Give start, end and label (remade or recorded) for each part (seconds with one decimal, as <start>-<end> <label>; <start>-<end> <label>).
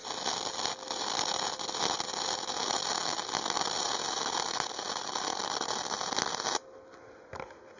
0.0-7.8 recorded